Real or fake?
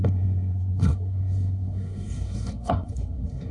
fake